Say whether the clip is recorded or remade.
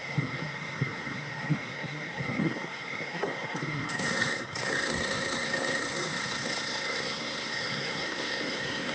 remade